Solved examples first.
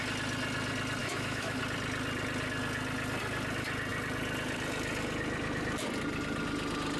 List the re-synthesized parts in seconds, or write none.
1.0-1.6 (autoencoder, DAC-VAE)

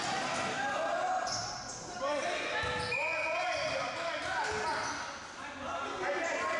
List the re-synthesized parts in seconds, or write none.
none

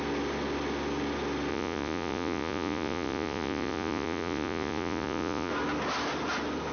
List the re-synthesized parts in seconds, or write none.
1.5-5.5 (vocoder, Vocos)

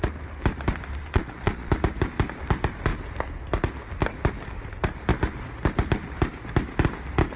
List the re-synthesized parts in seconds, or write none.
1.0-1.7 (vocoder, Vocos)

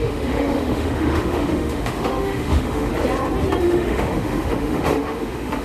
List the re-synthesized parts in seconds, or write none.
0.0-2.9 (autoencoder, DAC-VAE); 3.6-5.6